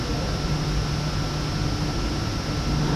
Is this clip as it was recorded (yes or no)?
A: yes